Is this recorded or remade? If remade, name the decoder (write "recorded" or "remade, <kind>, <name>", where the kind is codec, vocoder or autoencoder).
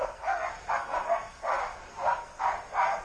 remade, codec, SNAC